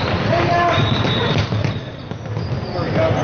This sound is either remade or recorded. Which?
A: recorded